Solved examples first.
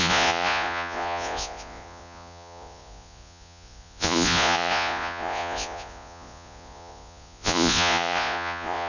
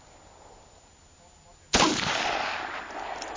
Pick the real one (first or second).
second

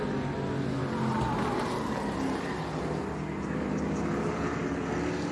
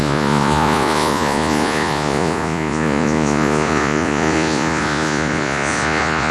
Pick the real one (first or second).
first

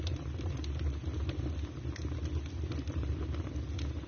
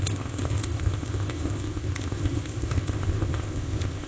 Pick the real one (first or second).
first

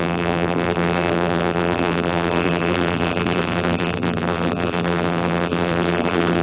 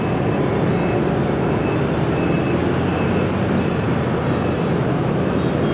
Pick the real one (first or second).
second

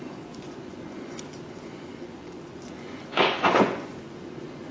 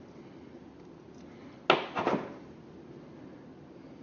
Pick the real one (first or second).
second